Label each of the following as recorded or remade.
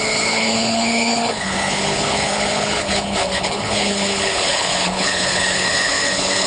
remade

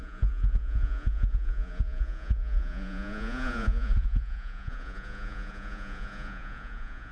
remade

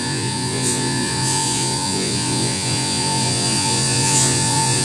remade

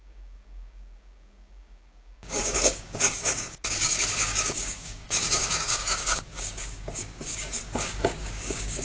remade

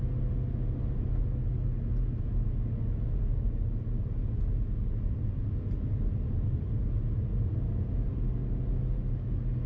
recorded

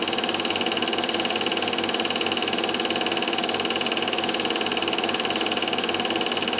recorded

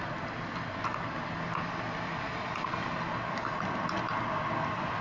recorded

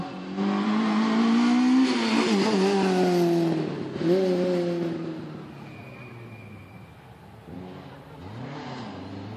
recorded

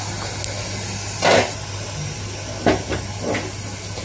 recorded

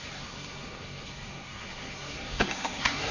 remade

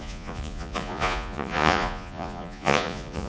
remade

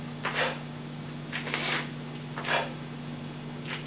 recorded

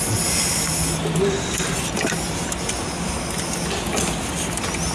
recorded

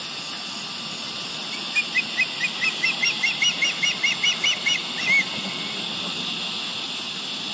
recorded